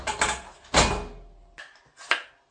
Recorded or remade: recorded